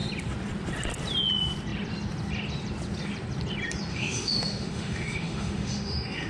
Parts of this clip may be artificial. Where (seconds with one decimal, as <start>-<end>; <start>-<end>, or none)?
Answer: 3.9-6.3